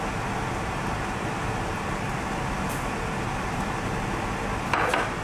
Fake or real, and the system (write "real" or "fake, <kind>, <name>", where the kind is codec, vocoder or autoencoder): real